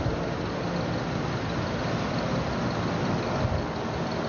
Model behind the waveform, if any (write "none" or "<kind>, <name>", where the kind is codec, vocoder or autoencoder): none